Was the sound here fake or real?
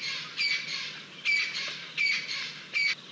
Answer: real